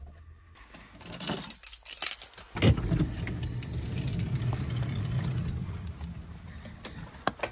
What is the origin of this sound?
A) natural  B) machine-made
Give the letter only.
A